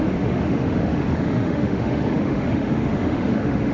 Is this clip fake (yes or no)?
yes